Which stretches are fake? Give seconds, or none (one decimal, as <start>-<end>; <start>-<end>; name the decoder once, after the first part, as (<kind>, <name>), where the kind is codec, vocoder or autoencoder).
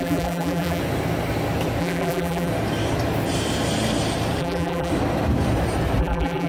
0.0-0.8 (vocoder, BigVGAN v2); 1.8-2.5; 4.4-4.9; 6.0-6.5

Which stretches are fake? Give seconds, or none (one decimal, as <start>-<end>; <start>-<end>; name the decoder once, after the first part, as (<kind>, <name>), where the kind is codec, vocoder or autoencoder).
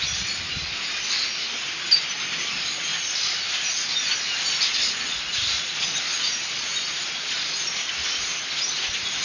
none